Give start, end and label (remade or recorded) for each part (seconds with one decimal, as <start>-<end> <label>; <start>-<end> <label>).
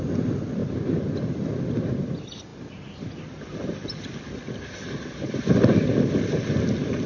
0.0-7.1 recorded